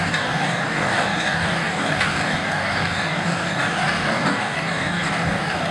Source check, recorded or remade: remade